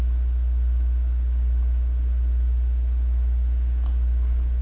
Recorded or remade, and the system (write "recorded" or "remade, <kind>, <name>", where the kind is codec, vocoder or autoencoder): recorded